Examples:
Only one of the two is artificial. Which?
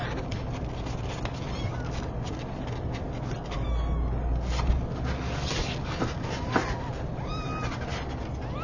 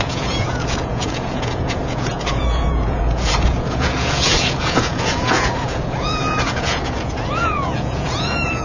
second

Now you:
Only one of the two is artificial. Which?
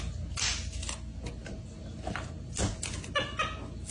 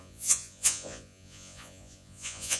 second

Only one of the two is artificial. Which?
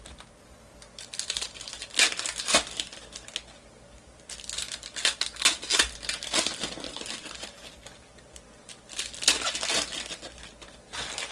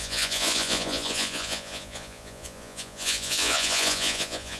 second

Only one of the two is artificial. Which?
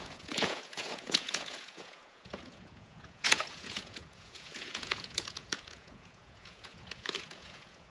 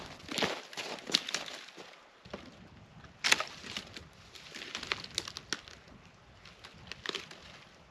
first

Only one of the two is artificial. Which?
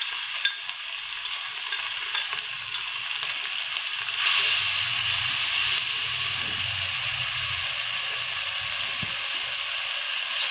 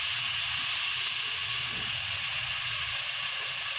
second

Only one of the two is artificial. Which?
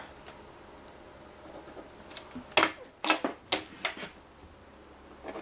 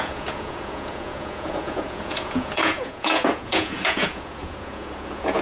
second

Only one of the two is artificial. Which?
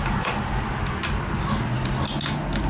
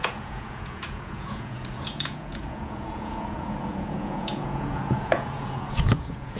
second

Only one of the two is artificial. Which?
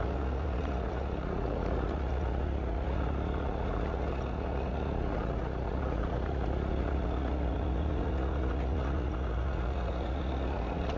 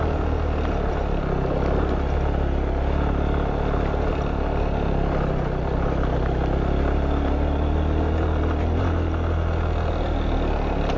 first